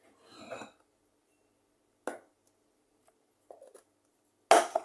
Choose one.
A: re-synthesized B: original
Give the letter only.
B